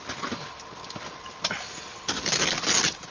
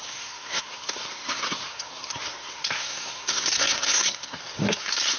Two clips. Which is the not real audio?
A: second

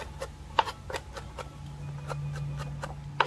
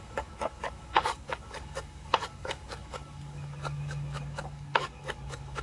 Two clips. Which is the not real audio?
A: second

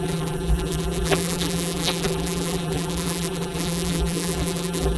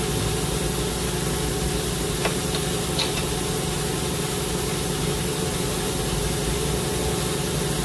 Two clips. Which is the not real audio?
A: first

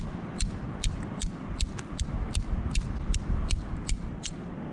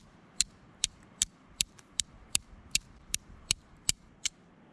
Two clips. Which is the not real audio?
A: second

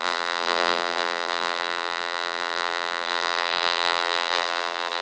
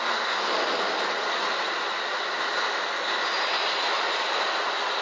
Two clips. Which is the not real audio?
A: first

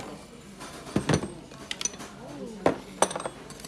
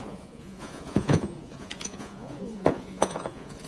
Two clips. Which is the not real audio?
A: second